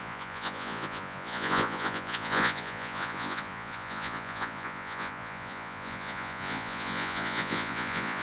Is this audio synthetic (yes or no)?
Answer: yes